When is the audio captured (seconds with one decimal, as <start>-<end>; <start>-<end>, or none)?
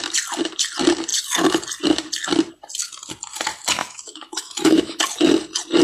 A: 0.0-3.8; 5.0-5.8